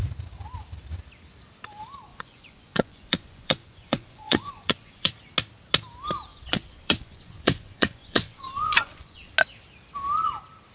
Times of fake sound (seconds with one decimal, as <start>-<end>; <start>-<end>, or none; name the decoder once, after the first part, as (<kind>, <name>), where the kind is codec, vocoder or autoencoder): 2.1-5.1 (vocoder, Vocos); 6.3-9.3